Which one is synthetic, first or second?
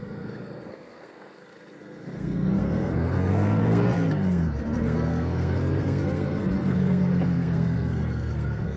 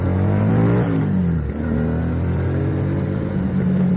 first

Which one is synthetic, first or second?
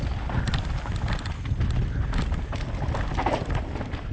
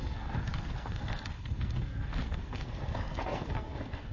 second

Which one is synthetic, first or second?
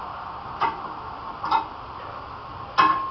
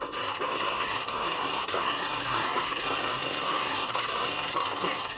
second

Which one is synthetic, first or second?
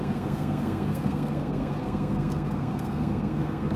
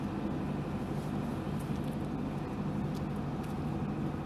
first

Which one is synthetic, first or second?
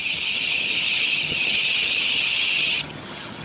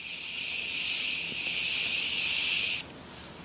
first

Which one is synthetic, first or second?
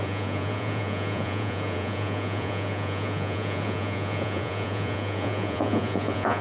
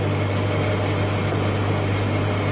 first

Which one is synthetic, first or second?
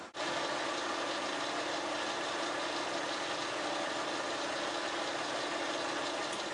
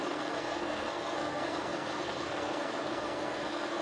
second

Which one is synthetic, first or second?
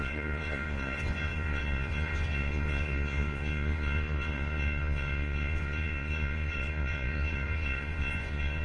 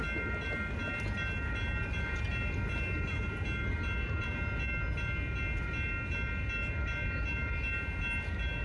first